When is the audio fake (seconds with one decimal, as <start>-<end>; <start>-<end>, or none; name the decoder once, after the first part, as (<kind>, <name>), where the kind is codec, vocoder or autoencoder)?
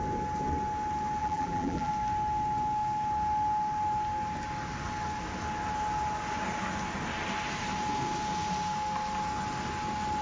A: 1.2-1.9 (vocoder, BigVGAN v2)